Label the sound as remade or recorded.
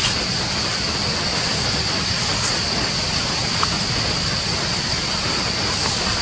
recorded